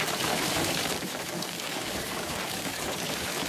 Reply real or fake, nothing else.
fake